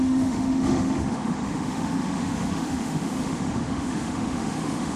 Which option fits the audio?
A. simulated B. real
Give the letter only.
A